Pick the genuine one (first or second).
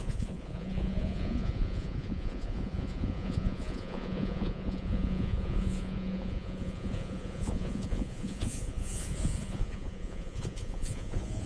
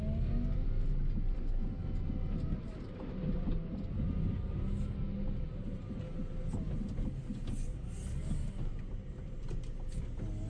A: second